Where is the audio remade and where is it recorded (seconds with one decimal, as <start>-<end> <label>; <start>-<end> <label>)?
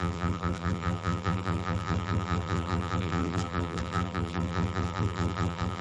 0.0-5.8 remade